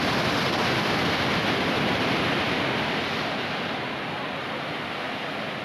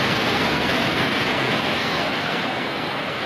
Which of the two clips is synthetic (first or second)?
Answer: second